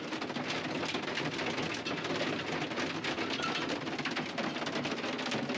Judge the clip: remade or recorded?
recorded